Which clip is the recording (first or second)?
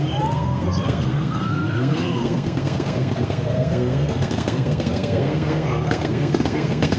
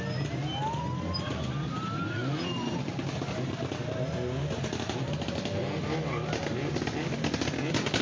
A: second